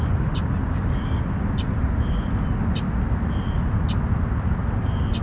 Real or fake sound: real